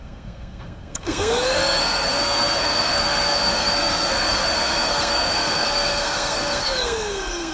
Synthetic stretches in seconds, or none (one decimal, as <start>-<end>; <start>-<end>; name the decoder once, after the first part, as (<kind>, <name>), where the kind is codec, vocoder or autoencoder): 0.0-7.5 (codec, SNAC)